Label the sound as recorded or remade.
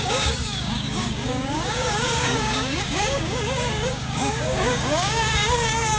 remade